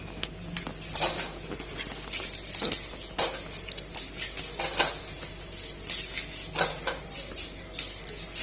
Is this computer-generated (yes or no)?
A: no